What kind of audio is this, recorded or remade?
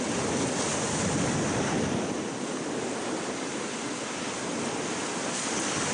recorded